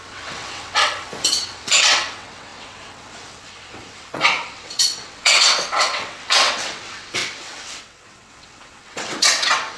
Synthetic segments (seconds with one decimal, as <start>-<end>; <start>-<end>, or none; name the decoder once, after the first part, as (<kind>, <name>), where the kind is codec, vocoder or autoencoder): 0.0-9.8 (vocoder, WaveNeXt)